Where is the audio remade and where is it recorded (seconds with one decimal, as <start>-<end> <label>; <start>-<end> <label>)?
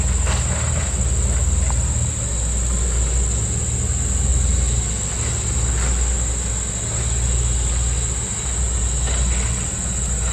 0.0-10.3 recorded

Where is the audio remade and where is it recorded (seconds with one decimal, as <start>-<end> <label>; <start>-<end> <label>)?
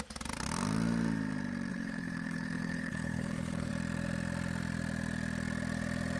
0.0-1.7 recorded; 1.7-3.7 remade; 3.7-6.2 recorded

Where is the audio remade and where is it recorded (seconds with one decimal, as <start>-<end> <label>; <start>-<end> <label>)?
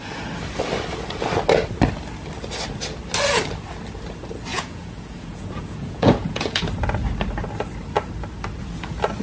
0.0-4.5 recorded; 4.5-6.6 remade; 6.6-9.2 recorded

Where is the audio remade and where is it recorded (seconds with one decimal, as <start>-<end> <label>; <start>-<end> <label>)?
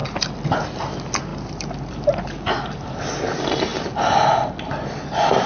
0.0-5.5 recorded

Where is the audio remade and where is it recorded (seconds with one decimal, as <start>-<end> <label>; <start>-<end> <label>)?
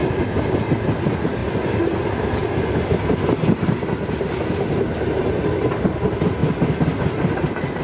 0.0-7.8 recorded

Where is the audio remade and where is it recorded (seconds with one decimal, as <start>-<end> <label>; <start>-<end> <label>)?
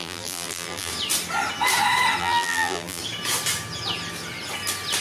0.0-0.9 remade; 0.9-2.2 recorded; 2.2-3.0 remade; 3.0-5.0 recorded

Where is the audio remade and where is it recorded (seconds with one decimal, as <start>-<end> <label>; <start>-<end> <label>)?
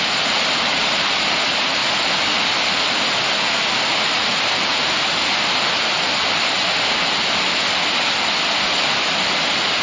0.0-9.8 recorded